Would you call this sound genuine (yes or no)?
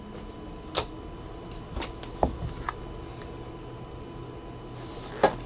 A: yes